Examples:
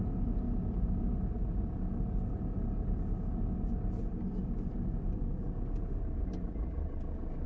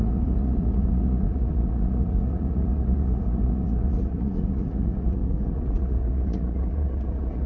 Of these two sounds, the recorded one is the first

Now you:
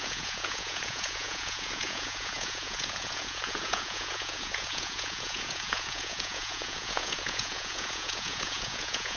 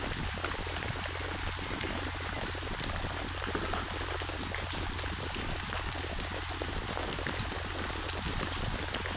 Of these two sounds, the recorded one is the second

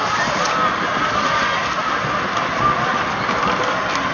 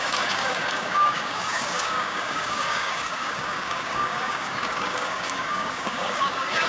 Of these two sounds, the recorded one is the first